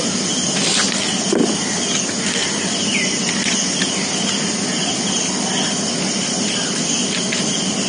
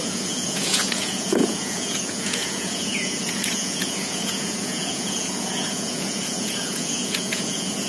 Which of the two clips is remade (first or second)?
second